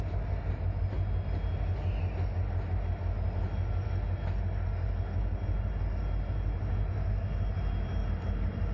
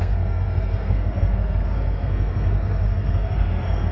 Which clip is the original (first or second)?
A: first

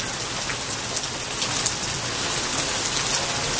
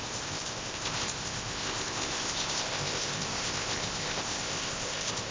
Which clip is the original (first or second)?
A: first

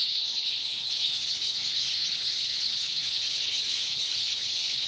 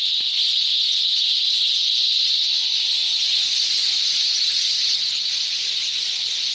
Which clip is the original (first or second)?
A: second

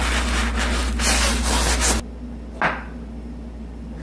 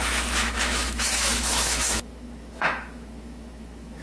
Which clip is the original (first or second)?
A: first